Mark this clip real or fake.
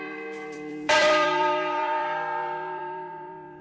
fake